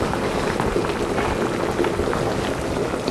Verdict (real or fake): real